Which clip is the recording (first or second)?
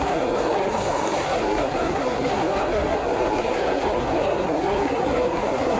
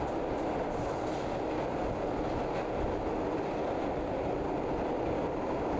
second